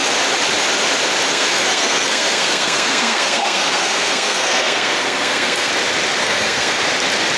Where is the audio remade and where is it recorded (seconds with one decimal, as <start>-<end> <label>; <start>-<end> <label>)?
0.0-1.3 recorded; 1.3-5.7 remade; 5.7-6.2 recorded; 6.2-6.8 remade; 6.8-7.4 recorded